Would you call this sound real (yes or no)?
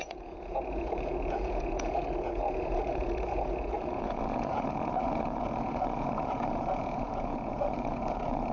no